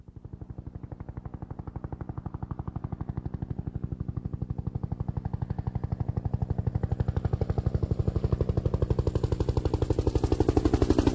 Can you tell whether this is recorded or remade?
recorded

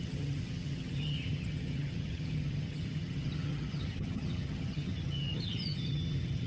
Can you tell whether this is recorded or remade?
remade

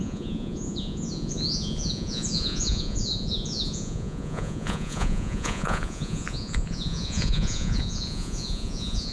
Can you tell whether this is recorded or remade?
remade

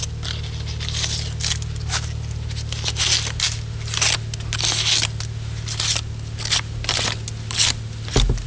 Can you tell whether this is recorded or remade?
recorded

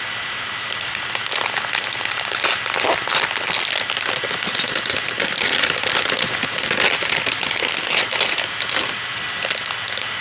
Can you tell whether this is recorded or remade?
recorded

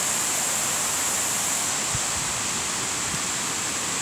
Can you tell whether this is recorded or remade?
remade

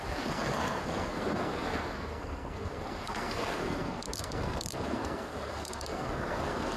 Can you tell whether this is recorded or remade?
remade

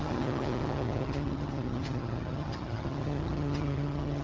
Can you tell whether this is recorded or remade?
remade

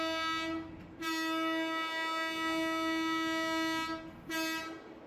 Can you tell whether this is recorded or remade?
recorded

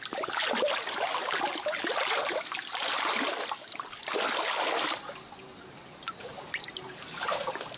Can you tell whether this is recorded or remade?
recorded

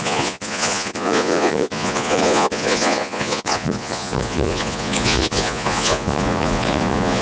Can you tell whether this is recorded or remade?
remade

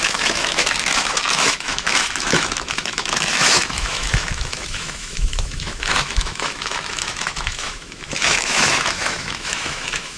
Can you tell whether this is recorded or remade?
remade